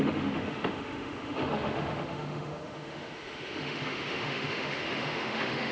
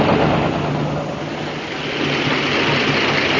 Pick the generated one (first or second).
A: first